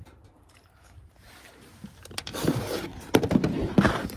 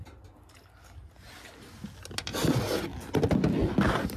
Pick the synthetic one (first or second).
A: first